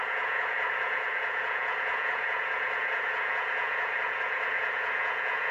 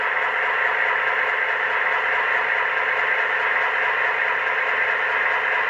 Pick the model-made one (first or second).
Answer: first